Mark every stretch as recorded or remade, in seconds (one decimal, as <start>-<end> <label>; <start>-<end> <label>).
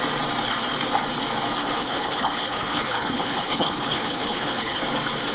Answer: 0.0-1.6 recorded; 1.6-4.8 remade; 4.8-5.3 recorded